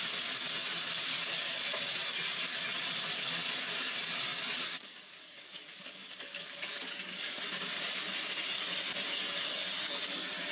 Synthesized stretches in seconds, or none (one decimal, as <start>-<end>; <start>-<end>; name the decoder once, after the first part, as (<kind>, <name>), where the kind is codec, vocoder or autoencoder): 4.7-7.4 (codec, DAC)